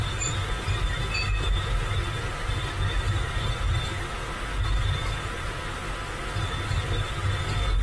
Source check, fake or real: real